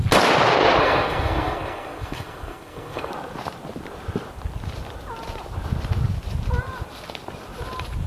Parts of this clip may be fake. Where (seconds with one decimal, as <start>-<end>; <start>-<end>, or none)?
0.8-3.1